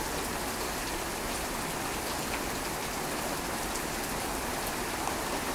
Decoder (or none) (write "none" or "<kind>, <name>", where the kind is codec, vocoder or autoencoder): none